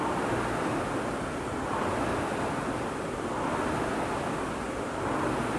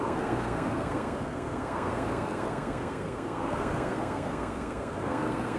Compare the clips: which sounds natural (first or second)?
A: first